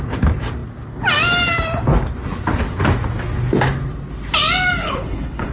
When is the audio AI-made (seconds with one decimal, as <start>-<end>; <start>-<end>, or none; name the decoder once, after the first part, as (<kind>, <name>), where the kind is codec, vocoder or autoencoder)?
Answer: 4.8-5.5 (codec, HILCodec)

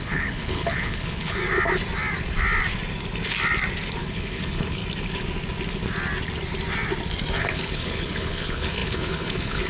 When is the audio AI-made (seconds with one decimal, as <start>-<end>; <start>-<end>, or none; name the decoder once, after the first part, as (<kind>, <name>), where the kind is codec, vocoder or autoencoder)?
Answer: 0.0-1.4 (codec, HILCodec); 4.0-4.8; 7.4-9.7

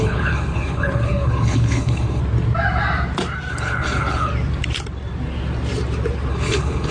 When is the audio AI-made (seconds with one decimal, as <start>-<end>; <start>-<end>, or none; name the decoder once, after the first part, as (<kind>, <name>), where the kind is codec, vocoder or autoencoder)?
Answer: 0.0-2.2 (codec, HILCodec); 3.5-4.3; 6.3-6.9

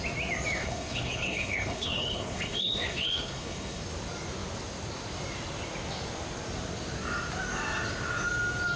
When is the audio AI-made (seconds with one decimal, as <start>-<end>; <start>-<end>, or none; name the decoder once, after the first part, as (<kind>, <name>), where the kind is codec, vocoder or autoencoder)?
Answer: 0.6-3.8 (codec, HILCodec)

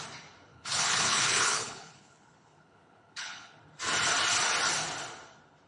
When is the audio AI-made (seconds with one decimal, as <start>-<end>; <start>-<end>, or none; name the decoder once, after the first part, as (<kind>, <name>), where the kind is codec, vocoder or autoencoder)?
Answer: 0.5-3.6 (codec, HILCodec)